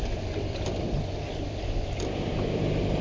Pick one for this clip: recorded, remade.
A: remade